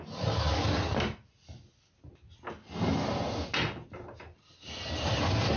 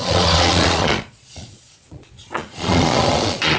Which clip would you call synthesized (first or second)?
second